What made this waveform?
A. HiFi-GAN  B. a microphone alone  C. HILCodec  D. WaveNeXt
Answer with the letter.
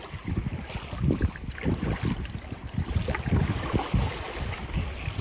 B